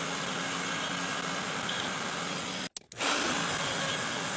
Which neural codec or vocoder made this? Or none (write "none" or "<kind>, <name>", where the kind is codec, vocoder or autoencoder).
none